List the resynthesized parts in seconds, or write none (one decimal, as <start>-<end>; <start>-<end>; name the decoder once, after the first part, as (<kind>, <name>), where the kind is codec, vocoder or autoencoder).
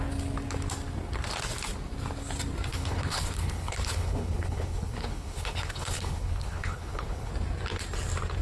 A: 2.7-7.3 (codec, HILCodec)